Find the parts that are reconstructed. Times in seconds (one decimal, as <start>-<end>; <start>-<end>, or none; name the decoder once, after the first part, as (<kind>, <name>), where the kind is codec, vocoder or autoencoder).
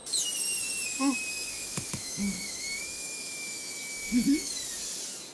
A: 1.3-4.5 (autoencoder, DAC-VAE)